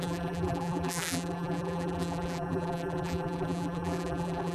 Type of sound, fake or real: fake